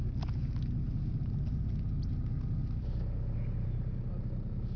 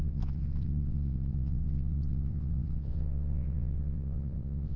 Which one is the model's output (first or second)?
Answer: second